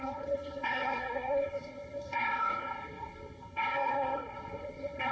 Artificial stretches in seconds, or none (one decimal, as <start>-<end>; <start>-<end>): 0.0-5.1